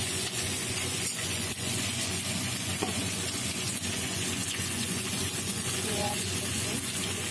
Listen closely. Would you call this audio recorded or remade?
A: remade